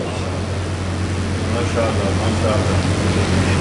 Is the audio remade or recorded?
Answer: recorded